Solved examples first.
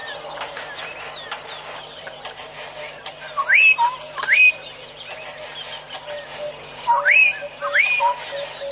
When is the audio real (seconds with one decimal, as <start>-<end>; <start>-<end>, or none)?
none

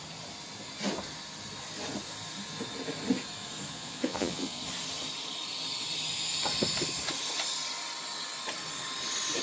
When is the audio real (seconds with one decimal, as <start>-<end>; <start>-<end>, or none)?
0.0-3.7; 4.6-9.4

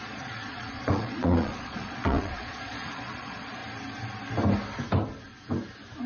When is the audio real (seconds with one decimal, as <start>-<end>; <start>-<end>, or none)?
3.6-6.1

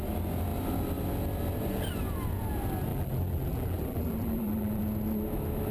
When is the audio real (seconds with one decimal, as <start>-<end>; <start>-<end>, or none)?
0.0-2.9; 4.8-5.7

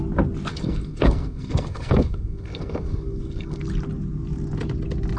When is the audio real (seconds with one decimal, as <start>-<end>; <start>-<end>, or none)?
0.0-0.5; 3.6-5.2

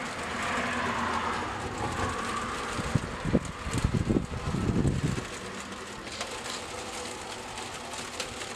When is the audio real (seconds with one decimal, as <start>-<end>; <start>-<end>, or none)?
0.0-8.6

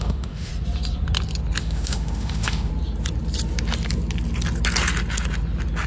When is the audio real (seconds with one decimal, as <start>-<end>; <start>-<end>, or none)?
0.5-1.6; 2.7-5.9

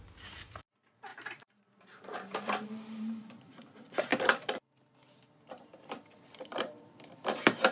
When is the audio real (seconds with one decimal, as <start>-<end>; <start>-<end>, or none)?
4.1-5.5